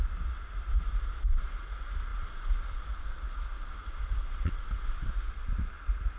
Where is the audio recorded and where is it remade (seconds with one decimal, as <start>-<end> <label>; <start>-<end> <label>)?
0.0-2.1 recorded; 2.1-3.0 remade; 3.0-6.2 recorded